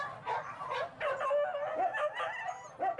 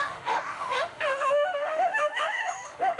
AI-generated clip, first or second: second